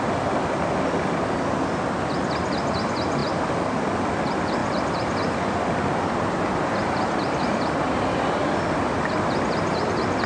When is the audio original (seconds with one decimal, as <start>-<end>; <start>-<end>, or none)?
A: 0.0-3.2; 3.8-4.6; 7.4-10.3